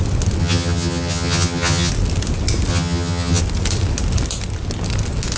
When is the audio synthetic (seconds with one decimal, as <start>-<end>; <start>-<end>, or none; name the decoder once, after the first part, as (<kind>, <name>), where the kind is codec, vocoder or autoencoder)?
0.4-1.9 (vocoder, HiFi-GAN); 2.7-3.4